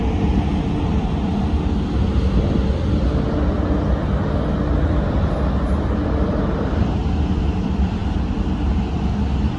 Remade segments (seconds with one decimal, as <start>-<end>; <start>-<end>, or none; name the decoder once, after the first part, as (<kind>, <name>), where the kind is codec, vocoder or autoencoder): 0.0-1.3 (vocoder, BigVGAN v2); 6.3-9.6